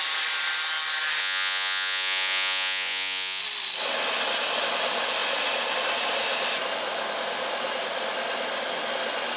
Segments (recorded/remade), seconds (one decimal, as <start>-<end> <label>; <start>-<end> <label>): 0.0-1.2 recorded; 1.2-3.4 remade; 3.4-9.4 recorded